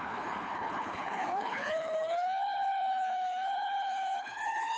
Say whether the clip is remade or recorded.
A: remade